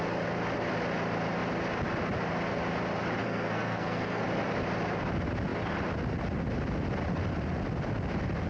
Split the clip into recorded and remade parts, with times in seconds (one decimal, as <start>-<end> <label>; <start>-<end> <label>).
0.0-3.2 recorded; 3.2-4.2 remade; 4.2-8.5 recorded